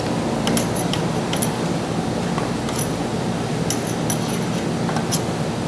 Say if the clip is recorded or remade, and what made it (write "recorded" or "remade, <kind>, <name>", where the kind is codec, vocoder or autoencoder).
recorded